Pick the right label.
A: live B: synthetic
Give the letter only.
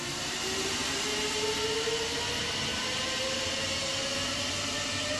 A